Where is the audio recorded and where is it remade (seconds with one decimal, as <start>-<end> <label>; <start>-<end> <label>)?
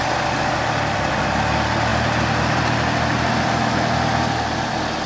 0.0-5.1 recorded